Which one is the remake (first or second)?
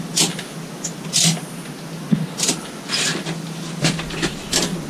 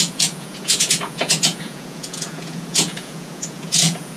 second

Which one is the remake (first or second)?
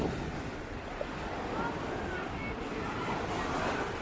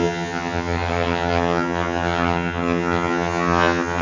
second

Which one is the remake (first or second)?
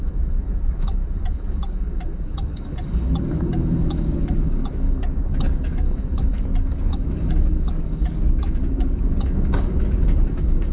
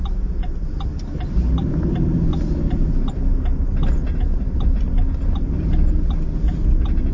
first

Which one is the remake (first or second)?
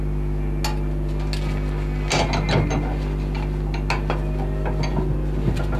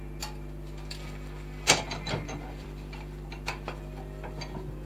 second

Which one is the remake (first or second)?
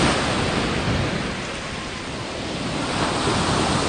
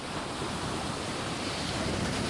second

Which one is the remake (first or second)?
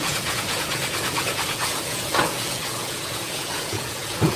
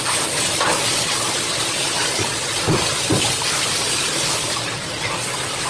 first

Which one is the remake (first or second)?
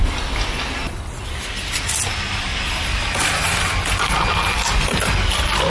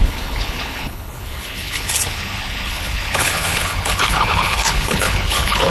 second